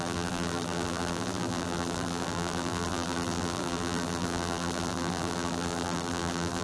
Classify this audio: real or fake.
fake